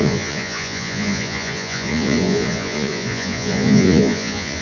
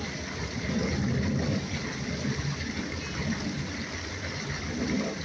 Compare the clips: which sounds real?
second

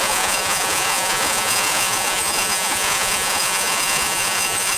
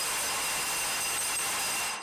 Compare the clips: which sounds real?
second